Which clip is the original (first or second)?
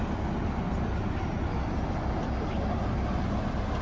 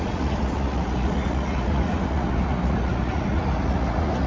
first